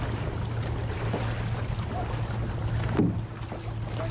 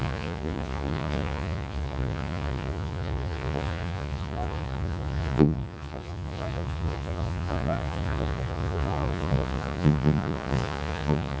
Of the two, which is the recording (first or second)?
first